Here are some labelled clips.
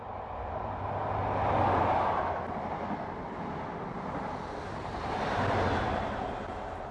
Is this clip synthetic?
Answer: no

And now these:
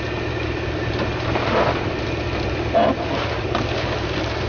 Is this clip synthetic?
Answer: no